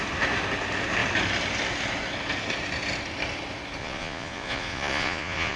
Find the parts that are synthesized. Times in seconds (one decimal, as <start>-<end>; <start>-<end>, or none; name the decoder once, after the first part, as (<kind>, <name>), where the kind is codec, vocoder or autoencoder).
3.8-5.6 (vocoder, Vocos)